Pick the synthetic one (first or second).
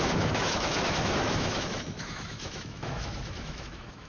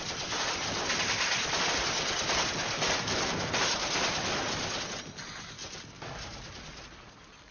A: first